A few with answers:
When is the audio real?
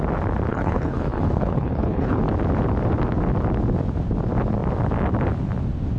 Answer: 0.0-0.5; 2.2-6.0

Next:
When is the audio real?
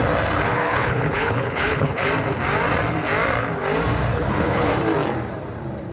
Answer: 0.0-0.4; 2.1-4.1; 4.7-5.9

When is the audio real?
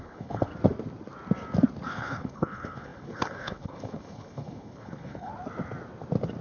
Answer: 0.5-1.9; 5.3-6.4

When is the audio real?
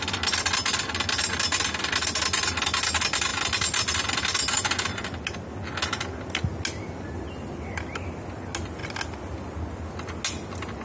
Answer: 0.0-10.8